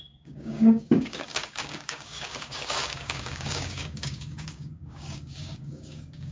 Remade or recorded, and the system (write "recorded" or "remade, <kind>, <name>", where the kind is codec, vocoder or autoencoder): remade, codec, DAC